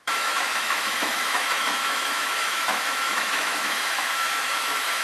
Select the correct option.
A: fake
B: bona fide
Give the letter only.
A